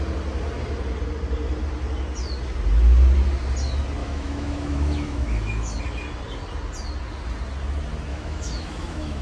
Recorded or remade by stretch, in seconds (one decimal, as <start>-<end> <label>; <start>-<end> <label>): 0.0-4.0 recorded; 4.0-5.8 remade; 5.8-8.1 recorded; 8.1-9.2 remade